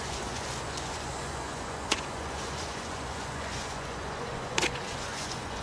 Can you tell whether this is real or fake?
fake